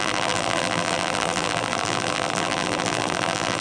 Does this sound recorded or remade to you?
remade